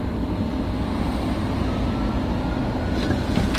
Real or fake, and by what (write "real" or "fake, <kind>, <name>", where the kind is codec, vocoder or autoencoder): real